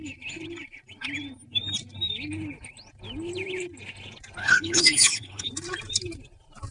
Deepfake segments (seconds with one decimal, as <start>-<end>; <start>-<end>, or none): 4.4-5.5